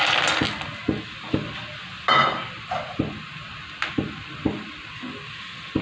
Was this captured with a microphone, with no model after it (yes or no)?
yes